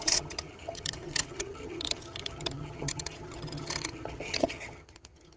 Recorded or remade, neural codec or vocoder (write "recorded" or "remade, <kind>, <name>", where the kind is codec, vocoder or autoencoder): remade, vocoder, HiFi-GAN